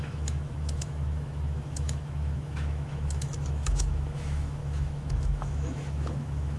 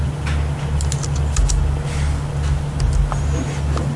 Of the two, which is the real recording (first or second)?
second